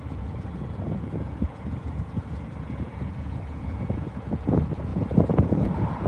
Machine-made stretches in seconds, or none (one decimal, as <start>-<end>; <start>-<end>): 0.0-6.1